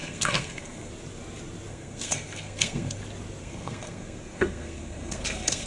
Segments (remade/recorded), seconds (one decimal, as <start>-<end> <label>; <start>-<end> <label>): 0.0-0.9 remade; 0.9-1.7 recorded; 1.7-3.0 remade; 3.0-3.4 recorded; 3.4-5.7 remade